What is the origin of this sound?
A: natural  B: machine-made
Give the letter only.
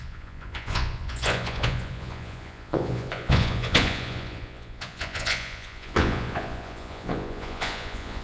B